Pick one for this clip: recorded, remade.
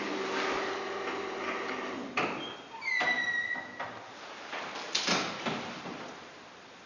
recorded